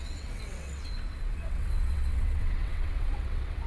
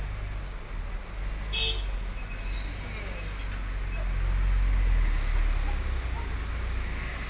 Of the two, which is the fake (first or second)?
first